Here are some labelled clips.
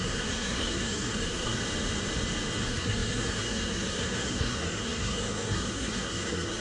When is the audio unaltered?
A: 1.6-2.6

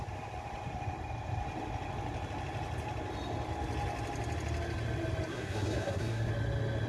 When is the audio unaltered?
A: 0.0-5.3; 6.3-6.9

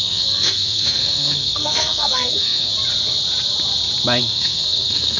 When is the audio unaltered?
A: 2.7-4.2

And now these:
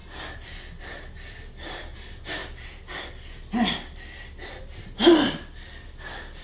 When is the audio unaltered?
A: 0.0-6.4

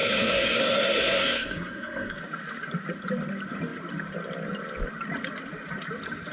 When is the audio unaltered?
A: 2.2-6.3

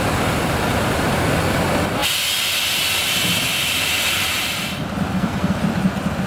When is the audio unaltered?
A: 0.0-5.1; 5.6-6.3

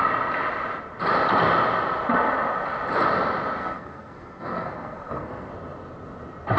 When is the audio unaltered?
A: 0.0-3.6; 5.5-6.6